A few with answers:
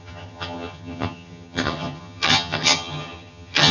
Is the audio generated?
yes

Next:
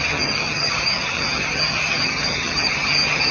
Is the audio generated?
yes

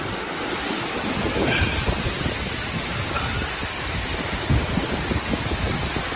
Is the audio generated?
no